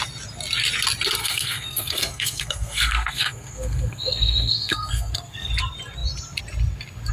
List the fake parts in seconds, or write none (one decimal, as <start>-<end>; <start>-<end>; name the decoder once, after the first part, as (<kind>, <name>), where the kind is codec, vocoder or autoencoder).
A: 1.2-5.5 (codec, SNAC)